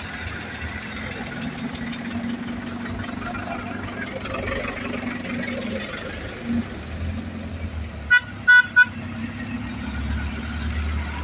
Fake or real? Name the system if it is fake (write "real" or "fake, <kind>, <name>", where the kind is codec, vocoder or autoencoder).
real